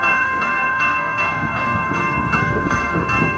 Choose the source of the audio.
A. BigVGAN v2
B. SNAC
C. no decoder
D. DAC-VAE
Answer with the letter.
B